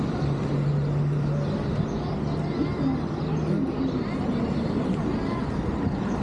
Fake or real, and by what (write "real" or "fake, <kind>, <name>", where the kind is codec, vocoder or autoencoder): real